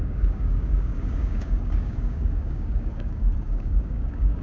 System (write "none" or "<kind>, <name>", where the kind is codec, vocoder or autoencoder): codec, DAC